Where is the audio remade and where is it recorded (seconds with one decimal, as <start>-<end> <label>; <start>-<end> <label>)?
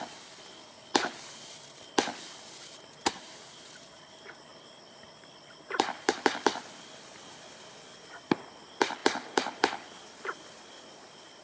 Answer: 0.0-9.0 recorded; 9.0-10.2 remade; 10.2-11.4 recorded